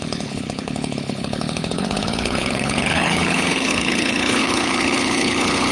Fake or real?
fake